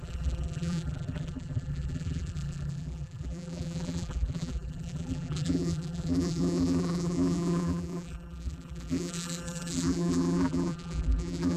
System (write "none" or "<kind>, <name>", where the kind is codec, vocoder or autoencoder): vocoder, BigVGAN v2